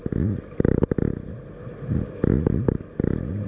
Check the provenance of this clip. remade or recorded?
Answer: recorded